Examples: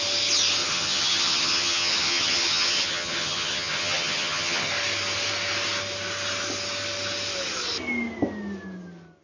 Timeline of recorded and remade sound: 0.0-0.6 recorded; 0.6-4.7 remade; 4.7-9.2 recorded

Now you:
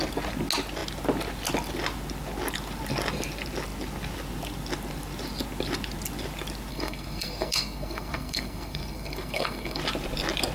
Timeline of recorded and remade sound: 0.0-6.7 recorded; 6.7-9.8 remade; 9.8-10.5 recorded

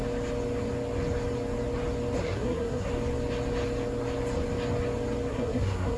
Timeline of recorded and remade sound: 0.0-2.2 recorded; 2.2-2.9 remade; 2.9-5.3 recorded; 5.3-6.0 remade

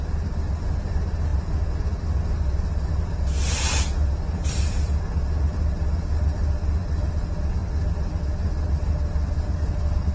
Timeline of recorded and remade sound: 0.0-10.1 recorded

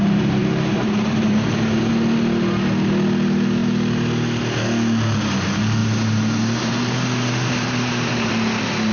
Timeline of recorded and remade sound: 0.0-0.4 recorded; 0.4-1.9 remade; 1.9-5.8 recorded; 5.8-8.3 remade; 8.3-8.9 recorded

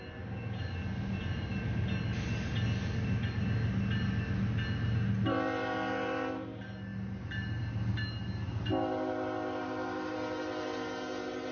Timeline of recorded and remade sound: 0.0-11.5 recorded

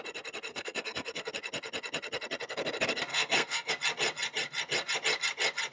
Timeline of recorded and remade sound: 0.0-0.5 recorded; 0.5-1.3 remade; 1.3-3.1 recorded; 3.1-3.7 remade; 3.7-5.7 recorded